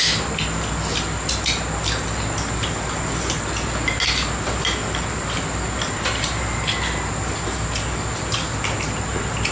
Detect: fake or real real